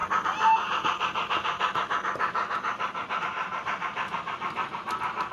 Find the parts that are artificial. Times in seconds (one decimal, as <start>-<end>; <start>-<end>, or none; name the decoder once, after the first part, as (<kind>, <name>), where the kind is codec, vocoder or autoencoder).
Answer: none